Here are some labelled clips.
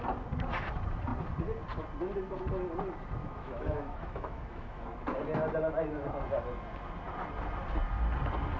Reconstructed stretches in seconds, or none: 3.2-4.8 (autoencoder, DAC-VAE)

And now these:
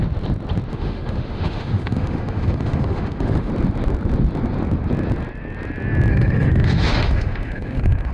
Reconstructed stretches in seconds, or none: 0.7-3.5 (autoencoder, DAC-VAE); 6.1-8.1

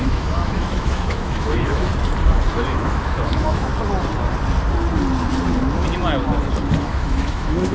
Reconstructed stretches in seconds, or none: 0.0-1.9 (autoencoder, DAC-VAE); 2.5-3.7; 6.8-7.7

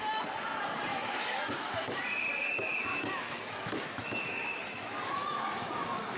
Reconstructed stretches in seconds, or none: 0.9-2.0 (autoencoder, DAC-VAE); 2.9-6.2